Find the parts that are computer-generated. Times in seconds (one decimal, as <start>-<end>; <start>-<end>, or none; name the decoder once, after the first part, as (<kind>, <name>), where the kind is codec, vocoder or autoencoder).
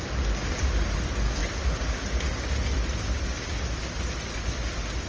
none